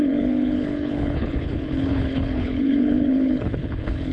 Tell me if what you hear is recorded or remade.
remade